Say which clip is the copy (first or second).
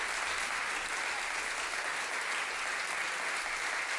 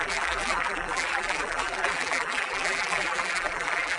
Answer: second